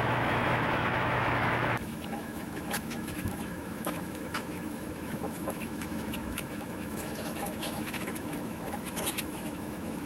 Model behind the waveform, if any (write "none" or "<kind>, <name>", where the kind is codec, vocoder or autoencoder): autoencoder, DAC-VAE